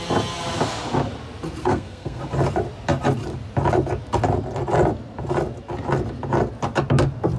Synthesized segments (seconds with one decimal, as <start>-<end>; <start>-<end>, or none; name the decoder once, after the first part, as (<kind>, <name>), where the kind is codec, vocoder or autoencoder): 1.6-2.2 (codec, SNAC)